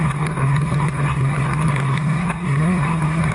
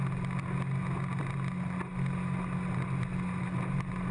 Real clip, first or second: second